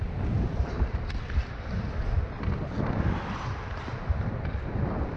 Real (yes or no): yes